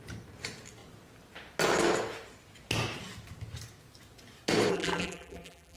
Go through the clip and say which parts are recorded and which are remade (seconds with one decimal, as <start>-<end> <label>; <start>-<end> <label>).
0.0-4.7 recorded; 4.7-5.8 remade